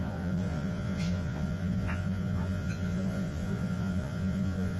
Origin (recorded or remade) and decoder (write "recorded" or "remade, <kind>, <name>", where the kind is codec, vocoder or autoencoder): remade, vocoder, Vocos